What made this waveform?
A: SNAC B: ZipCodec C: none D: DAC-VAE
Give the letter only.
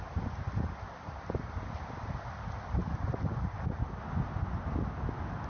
C